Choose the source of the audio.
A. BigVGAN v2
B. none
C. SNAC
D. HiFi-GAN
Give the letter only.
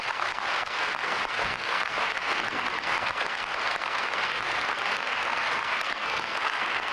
C